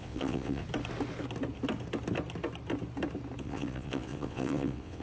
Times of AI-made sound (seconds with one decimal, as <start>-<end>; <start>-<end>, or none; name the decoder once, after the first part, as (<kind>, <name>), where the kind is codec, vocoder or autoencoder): 0.0-0.6 (vocoder, WaveNeXt); 3.4-5.0